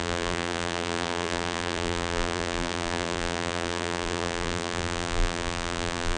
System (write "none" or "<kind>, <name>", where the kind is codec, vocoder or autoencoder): vocoder, BigVGAN v2